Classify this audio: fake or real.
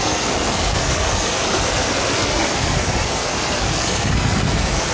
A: fake